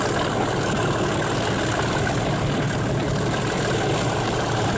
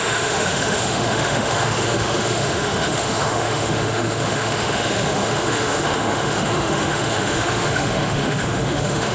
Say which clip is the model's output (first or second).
second